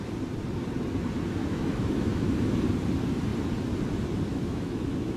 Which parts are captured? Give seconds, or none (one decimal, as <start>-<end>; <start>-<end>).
0.0-1.4; 2.5-4.3

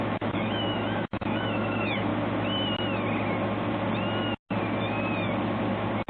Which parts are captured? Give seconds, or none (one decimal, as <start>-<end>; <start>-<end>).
2.1-6.1